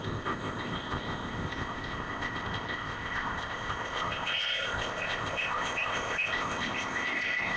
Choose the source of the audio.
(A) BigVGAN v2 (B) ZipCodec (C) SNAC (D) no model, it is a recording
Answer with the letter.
B